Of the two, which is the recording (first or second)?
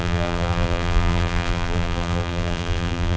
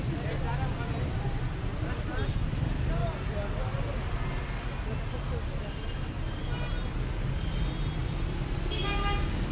second